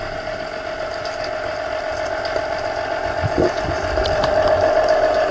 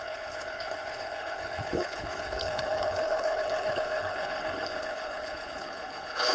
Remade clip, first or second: second